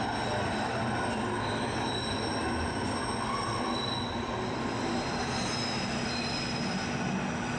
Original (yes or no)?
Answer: yes